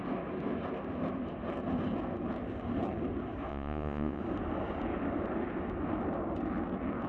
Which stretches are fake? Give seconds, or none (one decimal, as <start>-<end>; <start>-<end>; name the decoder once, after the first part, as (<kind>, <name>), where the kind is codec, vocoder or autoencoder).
3.5-4.2 (vocoder, Vocos)